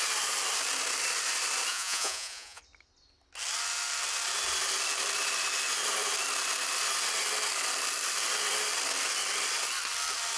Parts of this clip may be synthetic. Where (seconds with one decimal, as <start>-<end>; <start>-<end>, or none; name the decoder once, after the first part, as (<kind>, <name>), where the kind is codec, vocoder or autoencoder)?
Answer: 1.7-2.6 (vocoder, Vocos)